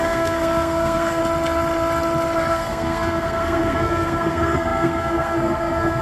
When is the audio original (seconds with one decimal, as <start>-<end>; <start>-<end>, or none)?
1.2-2.5